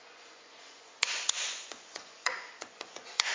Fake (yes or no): yes